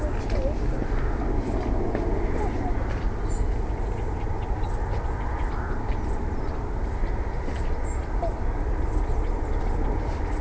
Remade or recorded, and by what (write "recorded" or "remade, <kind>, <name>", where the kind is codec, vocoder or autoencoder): recorded